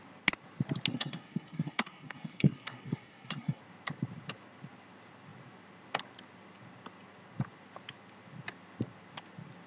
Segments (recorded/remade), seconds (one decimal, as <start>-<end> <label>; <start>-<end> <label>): 0.0-0.9 recorded; 0.9-3.6 remade; 3.6-9.7 recorded